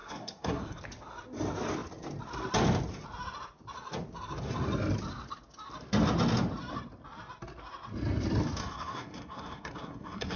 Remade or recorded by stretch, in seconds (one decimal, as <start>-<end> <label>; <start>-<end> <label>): 0.0-0.8 remade; 0.8-8.6 recorded; 8.6-10.4 remade